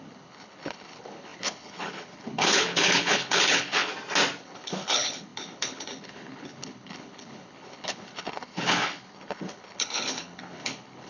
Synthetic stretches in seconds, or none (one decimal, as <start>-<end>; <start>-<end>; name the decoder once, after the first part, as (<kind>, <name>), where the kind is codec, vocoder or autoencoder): 0.0-3.9 (codec, HILCodec); 4.4-11.1